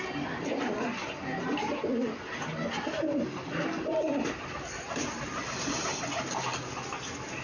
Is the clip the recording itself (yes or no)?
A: yes